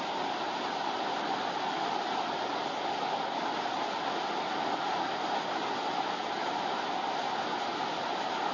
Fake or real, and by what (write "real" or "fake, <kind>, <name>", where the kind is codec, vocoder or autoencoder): real